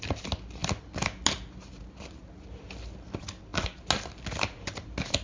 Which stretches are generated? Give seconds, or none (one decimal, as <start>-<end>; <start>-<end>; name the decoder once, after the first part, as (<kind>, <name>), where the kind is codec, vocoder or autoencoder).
none